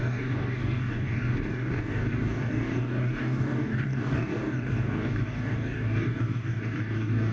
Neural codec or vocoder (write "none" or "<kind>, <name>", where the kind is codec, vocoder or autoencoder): codec, DAC